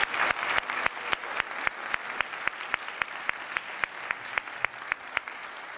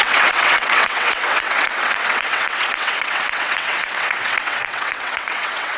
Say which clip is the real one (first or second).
first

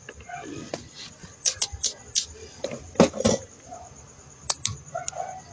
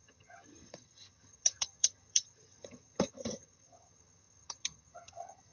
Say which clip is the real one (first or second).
first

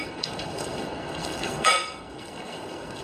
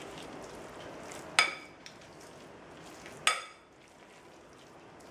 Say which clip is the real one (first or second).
second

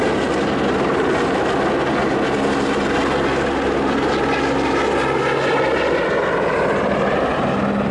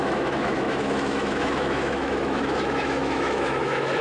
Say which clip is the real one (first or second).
first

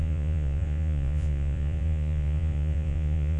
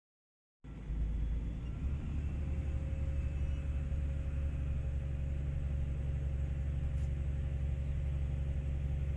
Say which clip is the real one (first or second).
second